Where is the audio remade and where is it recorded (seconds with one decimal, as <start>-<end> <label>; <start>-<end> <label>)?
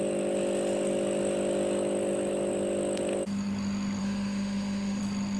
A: 0.0-4.0 recorded; 4.0-5.0 remade; 5.0-5.4 recorded